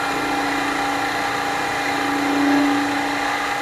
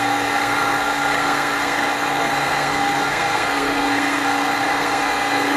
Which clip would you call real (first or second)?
first